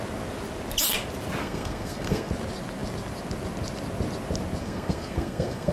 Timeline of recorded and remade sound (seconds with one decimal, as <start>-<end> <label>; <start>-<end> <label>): 0.0-1.4 recorded; 1.4-2.3 remade; 2.3-4.6 recorded; 4.6-5.7 remade